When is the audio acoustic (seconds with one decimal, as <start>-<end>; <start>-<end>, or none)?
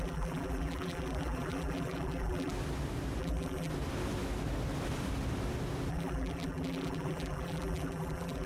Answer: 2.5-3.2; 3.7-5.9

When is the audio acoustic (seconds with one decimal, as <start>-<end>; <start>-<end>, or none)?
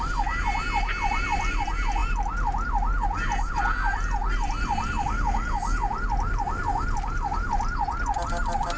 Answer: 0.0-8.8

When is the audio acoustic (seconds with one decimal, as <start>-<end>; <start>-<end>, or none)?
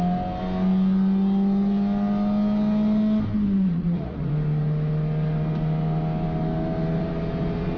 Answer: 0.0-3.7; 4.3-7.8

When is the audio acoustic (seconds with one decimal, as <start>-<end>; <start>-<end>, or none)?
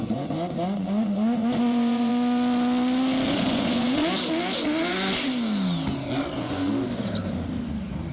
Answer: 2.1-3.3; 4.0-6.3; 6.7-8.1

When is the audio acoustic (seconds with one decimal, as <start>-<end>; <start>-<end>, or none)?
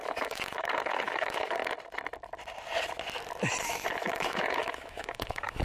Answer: 1.6-3.6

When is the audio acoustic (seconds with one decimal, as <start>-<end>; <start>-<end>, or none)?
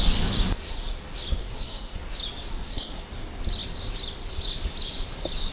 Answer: 0.0-1.4; 2.0-2.5; 3.1-5.5